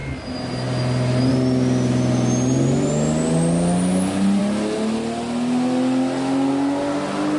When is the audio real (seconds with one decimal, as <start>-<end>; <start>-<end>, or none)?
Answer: 0.0-7.4